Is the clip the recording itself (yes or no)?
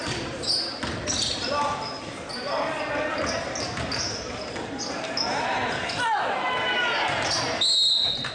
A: yes